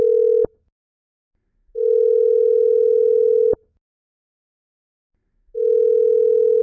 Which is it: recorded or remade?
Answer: recorded